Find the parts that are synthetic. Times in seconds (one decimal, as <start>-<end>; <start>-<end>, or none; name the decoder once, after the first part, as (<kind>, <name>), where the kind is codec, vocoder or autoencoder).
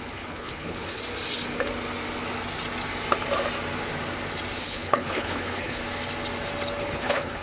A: 0.0-1.0 (codec, HILCodec); 4.6-5.8; 6.8-7.4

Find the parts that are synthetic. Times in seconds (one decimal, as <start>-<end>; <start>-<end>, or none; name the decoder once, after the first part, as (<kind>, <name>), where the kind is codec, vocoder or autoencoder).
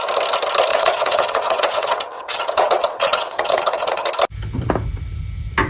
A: 0.7-4.1 (vocoder, WaveNeXt)